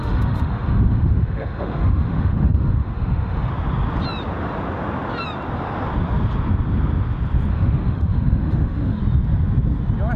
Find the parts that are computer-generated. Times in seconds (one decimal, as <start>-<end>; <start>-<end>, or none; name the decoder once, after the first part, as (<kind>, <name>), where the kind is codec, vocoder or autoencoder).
0.0-3.5 (autoencoder, DAC-VAE); 7.5-9.0